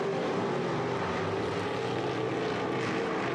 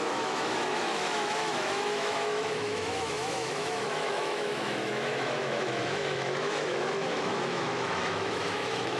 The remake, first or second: second